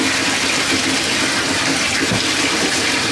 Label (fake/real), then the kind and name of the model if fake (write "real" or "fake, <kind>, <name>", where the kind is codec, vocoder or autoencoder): fake, vocoder, BigVGAN v2